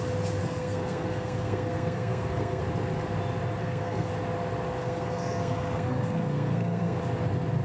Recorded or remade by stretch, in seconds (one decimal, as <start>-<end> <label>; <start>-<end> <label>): 0.0-0.4 recorded; 0.4-2.6 remade; 2.6-3.6 recorded; 3.6-4.1 remade; 4.1-4.8 recorded; 4.8-7.0 remade; 7.0-7.6 recorded